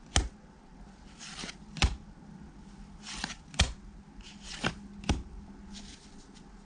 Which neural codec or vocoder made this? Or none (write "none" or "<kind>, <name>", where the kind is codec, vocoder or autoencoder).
none